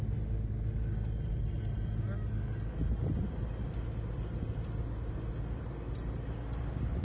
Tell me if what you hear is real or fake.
real